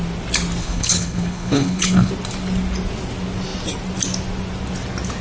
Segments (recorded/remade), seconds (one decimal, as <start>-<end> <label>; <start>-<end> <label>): 0.0-0.6 recorded; 0.6-2.1 remade; 2.1-5.2 recorded